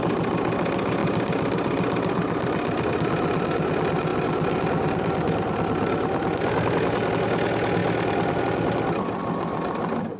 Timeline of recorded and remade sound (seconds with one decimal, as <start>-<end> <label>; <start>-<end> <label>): 0.0-1.0 recorded; 1.0-2.9 remade; 2.9-4.1 recorded; 4.1-7.1 remade; 7.1-7.8 recorded; 7.8-8.4 remade; 8.4-10.2 recorded